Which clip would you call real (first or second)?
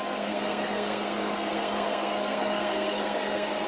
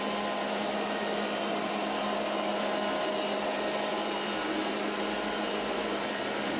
second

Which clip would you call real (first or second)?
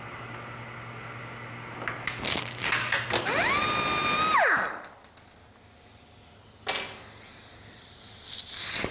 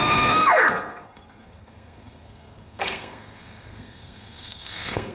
first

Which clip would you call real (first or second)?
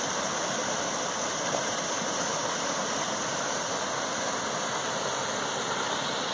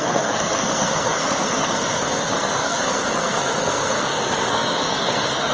first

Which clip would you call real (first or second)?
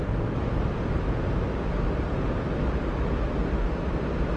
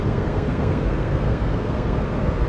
first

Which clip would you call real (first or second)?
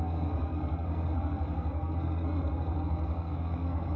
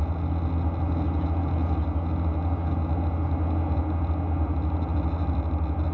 second